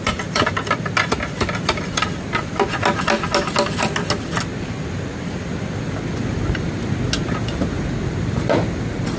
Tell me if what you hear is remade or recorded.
recorded